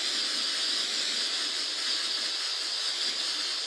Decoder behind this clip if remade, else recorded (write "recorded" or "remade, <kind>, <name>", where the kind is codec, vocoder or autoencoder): recorded